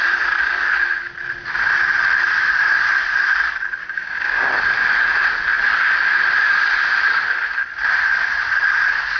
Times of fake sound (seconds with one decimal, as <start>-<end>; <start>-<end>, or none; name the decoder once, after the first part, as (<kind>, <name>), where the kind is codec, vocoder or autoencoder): 3.8-4.5 (codec, DAC)